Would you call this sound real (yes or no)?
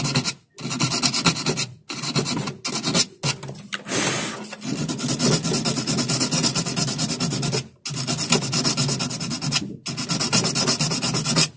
yes